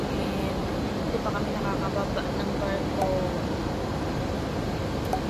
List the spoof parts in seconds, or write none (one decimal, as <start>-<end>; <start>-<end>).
0.6-1.6; 3.4-4.6